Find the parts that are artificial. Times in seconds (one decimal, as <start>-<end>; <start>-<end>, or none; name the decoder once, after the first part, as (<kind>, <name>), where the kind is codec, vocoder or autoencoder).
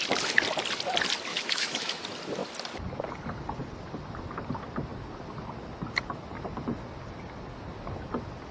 1.3-2.0 (autoencoder, DAC-VAE)